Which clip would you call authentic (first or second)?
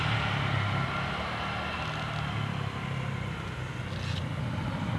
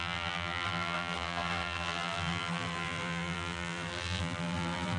first